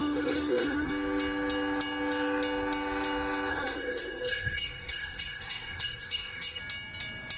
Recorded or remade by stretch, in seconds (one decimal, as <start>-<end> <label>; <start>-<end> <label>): 0.0-0.9 remade; 0.9-3.5 recorded; 3.5-6.6 remade; 6.6-7.4 recorded